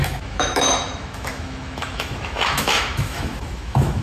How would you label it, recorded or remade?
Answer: remade